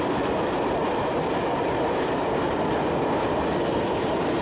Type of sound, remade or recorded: remade